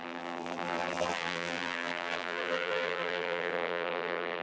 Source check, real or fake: fake